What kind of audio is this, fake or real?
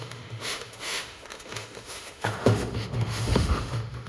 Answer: fake